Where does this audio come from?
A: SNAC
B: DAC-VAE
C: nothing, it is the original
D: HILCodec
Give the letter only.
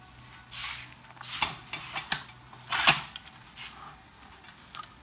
C